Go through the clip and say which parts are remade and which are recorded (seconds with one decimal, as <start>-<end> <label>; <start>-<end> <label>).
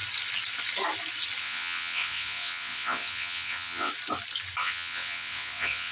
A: 0.0-1.4 recorded; 1.4-3.9 remade; 3.9-4.6 recorded; 4.6-5.9 remade